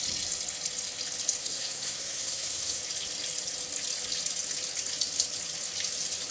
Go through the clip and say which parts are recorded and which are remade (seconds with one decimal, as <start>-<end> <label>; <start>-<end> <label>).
0.0-1.4 recorded; 1.4-2.8 remade; 2.8-6.3 recorded